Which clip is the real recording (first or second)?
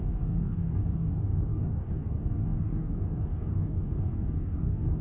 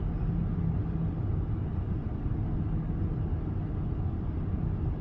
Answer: second